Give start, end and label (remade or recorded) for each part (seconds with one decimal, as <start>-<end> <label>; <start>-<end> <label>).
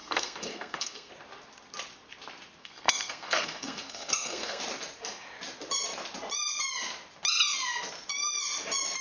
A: 0.0-1.1 remade; 1.1-2.6 recorded; 2.6-4.6 remade; 4.6-9.0 recorded